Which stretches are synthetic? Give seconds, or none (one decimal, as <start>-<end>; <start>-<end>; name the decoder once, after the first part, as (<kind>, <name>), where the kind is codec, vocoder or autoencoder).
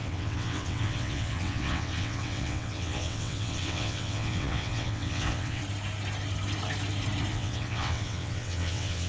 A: 0.0-5.6 (vocoder, WaveNeXt); 7.3-9.1